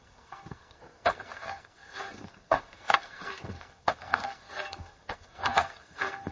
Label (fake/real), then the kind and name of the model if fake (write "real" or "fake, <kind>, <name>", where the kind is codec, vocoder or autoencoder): fake, codec, SNAC